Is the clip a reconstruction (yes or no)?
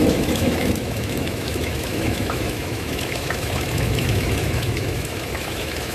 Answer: yes